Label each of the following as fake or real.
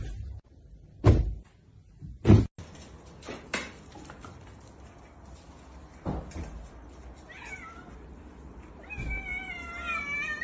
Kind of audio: real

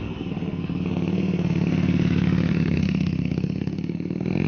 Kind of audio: fake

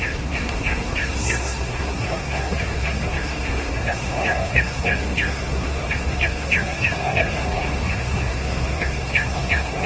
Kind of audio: fake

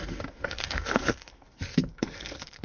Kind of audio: fake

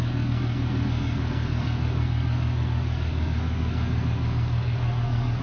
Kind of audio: fake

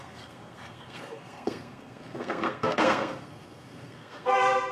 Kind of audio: fake